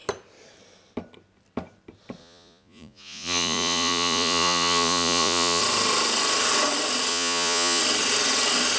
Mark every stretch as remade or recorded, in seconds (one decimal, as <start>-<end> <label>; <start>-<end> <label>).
0.0-2.2 recorded; 2.2-5.6 remade; 5.6-7.1 recorded; 7.1-7.8 remade; 7.8-8.8 recorded